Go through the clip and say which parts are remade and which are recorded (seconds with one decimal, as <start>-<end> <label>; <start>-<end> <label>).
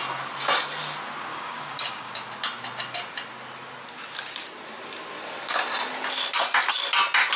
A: 0.0-1.3 recorded; 1.3-2.1 remade; 2.1-7.4 recorded